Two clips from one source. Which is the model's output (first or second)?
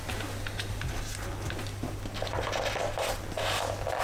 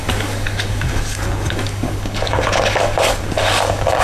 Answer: second